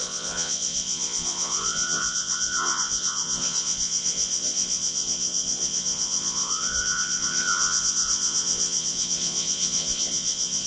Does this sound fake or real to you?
fake